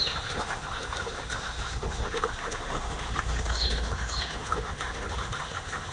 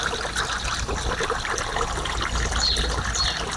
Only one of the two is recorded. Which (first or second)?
second